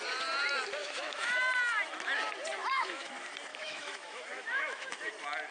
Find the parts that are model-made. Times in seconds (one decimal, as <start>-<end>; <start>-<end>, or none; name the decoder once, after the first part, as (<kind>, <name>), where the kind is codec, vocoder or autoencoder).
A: 0.8-1.4 (autoencoder, DAC-VAE); 2.6-3.1; 3.5-5.1